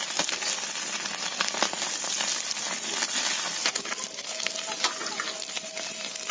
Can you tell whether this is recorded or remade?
recorded